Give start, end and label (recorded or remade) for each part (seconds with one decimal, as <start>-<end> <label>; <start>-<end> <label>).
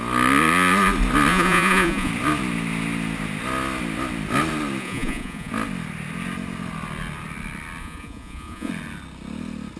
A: 0.0-1.3 recorded; 1.3-2.1 remade; 2.1-4.8 recorded; 4.8-5.5 remade; 5.5-7.8 recorded; 7.8-8.7 remade; 8.7-9.8 recorded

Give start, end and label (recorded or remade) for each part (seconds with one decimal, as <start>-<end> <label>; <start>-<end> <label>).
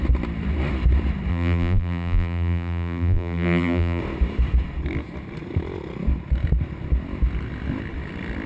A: 0.0-1.3 recorded; 1.3-4.0 remade; 4.0-8.5 recorded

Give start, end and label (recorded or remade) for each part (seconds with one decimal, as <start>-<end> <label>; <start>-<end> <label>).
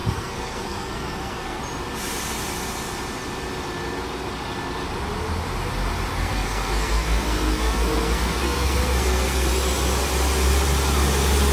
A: 0.0-1.6 remade; 1.6-6.1 recorded; 6.1-9.5 remade; 9.5-11.5 recorded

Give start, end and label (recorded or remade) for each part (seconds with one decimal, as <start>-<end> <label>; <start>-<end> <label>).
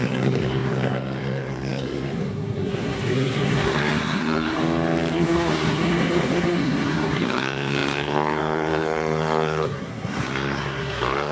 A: 0.0-4.6 remade; 4.6-5.1 recorded; 5.1-11.3 remade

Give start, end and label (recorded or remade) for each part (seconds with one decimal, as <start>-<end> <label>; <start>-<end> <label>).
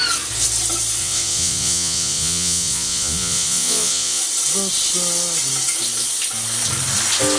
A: 0.0-1.0 recorded; 1.0-4.2 remade; 4.2-7.4 recorded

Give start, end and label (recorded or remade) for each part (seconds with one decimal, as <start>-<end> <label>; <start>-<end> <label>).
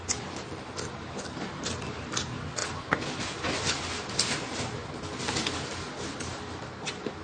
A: 0.0-2.6 remade; 2.6-4.3 recorded; 4.3-4.8 remade; 4.8-6.2 recorded; 6.2-7.2 remade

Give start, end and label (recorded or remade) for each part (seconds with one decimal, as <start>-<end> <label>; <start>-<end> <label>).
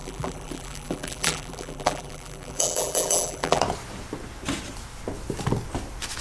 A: 0.0-3.6 remade; 3.6-6.2 recorded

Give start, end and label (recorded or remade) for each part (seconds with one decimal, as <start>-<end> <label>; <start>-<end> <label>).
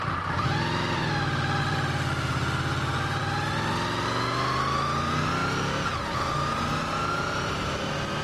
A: 0.0-8.2 recorded